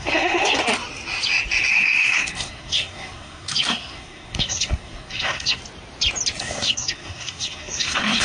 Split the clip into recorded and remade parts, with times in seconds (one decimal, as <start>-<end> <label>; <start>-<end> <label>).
0.0-0.6 remade; 0.6-1.7 recorded; 1.7-5.6 remade; 5.6-6.4 recorded; 6.4-8.2 remade